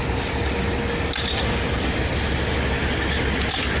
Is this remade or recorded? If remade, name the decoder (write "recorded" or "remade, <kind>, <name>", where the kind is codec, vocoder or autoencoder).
recorded